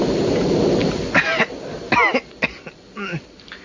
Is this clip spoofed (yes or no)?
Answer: no